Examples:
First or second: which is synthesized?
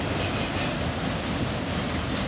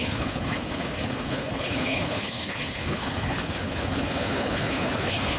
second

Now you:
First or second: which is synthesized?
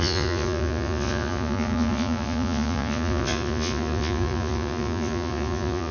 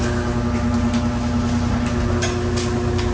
first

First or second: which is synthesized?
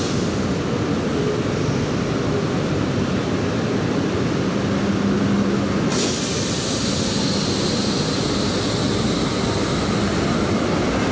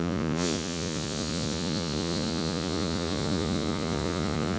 second